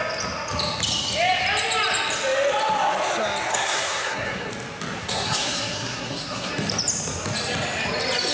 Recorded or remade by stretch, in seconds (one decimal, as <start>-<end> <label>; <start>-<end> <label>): 0.0-3.5 recorded; 3.5-4.5 remade; 4.5-5.0 recorded; 5.0-6.5 remade; 6.5-8.3 recorded